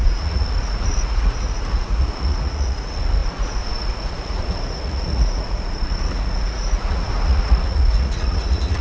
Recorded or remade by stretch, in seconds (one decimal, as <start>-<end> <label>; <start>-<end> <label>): 0.0-8.8 remade